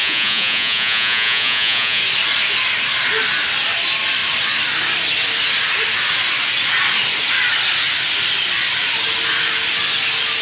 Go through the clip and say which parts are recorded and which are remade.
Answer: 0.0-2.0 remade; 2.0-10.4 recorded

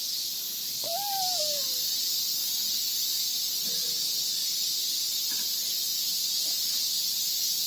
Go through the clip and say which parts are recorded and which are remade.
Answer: 0.0-7.7 recorded

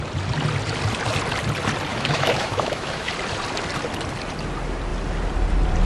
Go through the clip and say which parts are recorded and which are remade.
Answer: 0.0-1.9 recorded; 1.9-3.1 remade; 3.1-5.9 recorded

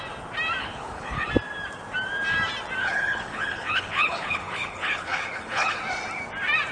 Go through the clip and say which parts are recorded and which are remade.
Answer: 0.0-0.6 recorded; 0.6-1.3 remade; 1.3-2.8 recorded; 2.8-5.8 remade; 5.8-6.7 recorded

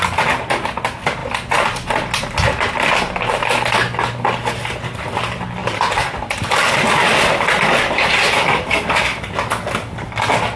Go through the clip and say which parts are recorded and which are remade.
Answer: 0.0-10.6 recorded

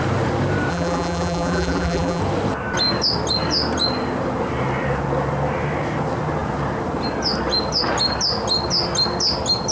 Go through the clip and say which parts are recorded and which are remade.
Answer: 0.0-0.7 recorded; 0.7-2.2 remade; 2.2-9.7 recorded